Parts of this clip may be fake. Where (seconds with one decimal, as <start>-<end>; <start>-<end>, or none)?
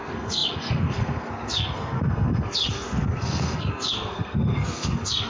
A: 0.0-5.3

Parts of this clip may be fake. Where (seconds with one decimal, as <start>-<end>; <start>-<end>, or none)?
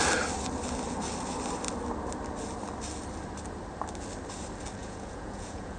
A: 4.8-5.8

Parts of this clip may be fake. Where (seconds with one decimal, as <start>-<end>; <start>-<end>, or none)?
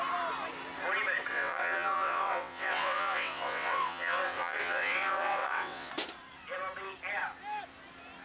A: 1.3-5.9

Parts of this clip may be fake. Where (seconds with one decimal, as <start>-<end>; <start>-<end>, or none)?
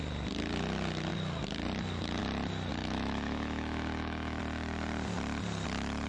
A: 2.8-4.4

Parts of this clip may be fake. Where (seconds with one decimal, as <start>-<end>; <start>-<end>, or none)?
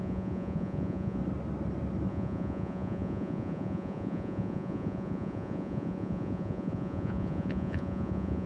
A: 0.0-1.2; 2.1-8.5